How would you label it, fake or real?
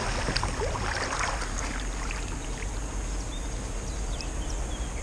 real